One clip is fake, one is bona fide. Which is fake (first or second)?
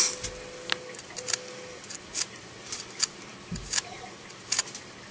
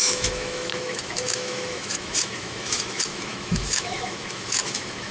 second